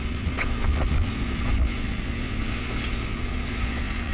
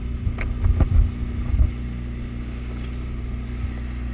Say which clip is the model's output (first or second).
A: first